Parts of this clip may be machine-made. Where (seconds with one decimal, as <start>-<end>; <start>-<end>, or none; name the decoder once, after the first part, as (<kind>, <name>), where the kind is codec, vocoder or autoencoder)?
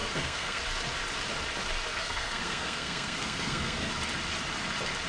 0.0-0.6 (codec, SNAC); 1.9-3.9